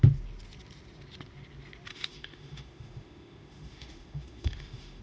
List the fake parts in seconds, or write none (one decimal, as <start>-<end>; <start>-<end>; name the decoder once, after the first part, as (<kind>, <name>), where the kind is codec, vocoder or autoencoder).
1.9-5.0 (autoencoder, DAC-VAE)